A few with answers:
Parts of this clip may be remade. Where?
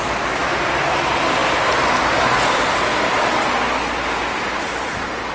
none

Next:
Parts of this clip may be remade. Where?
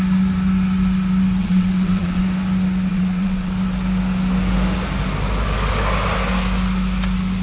1.4-2.2 (vocoder, WaveNeXt); 2.9-3.5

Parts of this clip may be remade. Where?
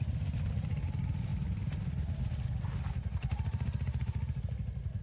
none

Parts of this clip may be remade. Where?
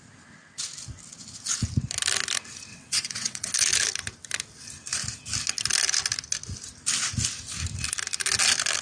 2.7-3.5 (vocoder, WaveNeXt)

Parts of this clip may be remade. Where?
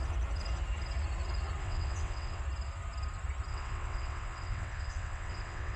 1.6-2.4 (vocoder, WaveNeXt); 3.5-5.8